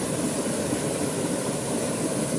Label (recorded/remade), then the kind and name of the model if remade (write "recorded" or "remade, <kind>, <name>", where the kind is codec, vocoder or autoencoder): recorded